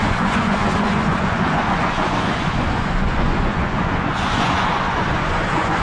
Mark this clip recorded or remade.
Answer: remade